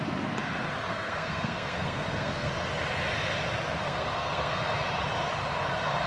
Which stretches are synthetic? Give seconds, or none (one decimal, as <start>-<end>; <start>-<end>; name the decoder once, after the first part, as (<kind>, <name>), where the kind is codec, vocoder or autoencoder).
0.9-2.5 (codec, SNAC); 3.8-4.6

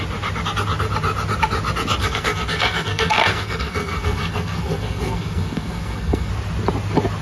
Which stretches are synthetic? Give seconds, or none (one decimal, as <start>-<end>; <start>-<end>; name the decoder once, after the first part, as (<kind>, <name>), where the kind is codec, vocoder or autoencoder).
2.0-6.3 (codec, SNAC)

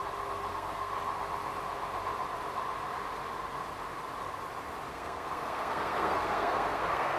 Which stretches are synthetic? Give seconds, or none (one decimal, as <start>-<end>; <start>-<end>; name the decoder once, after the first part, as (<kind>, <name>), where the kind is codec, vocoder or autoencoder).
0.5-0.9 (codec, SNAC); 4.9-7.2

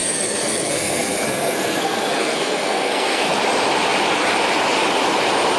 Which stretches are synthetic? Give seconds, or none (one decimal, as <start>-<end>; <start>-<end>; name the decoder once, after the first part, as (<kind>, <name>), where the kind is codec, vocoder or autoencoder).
0.0-3.4 (codec, SNAC)

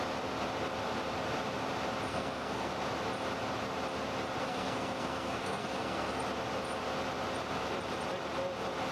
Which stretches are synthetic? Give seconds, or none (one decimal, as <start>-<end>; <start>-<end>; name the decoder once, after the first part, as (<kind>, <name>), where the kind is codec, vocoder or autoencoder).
2.1-2.7 (codec, SNAC); 4.4-6.2

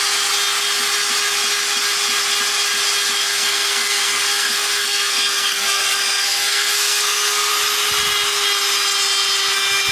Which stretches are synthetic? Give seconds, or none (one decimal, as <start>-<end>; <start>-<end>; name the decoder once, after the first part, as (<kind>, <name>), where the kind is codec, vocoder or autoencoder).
3.2-7.5 (codec, SNAC)

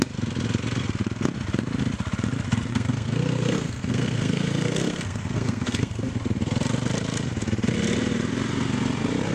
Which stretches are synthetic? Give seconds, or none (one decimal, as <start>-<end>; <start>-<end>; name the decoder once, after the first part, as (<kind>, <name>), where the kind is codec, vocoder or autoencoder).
2.7-6.1 (codec, SNAC)

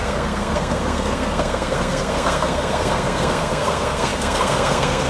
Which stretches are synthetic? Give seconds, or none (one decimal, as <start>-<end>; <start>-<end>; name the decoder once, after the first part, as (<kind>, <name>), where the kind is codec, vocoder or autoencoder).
0.0-5.1 (codec, SNAC)